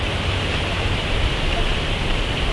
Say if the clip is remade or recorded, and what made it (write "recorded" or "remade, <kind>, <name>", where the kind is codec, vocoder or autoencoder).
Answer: recorded